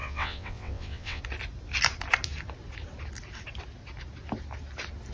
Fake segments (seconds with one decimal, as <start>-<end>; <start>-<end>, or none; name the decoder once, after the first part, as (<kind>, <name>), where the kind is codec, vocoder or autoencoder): 0.0-1.2 (vocoder, WaveNeXt)